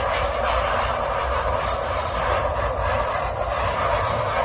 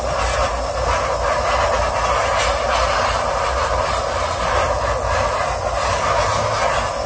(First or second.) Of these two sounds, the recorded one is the second